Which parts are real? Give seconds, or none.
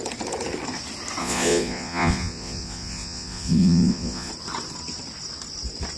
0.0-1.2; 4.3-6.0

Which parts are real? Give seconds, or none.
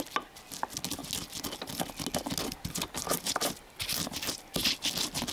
0.0-5.3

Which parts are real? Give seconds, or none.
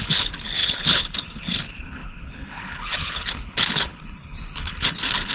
none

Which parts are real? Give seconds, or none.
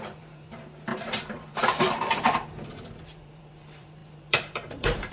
none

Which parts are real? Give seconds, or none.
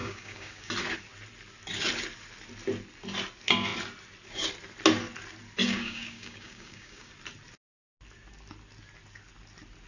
0.7-5.6; 7.1-9.9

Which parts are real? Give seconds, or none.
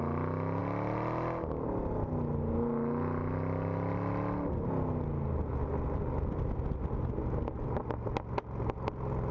0.0-9.3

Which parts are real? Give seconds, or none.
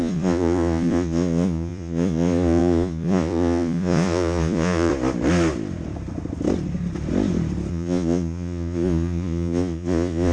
4.9-7.7